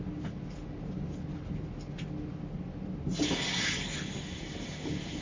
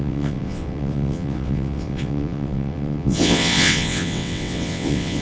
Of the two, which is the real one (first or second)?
first